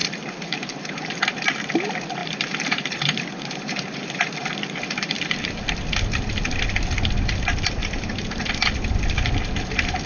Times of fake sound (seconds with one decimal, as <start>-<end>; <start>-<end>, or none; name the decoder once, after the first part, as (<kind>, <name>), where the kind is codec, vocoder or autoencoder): 0.0-1.1 (vocoder, BigVGAN v2); 2.2-5.5; 7.8-8.5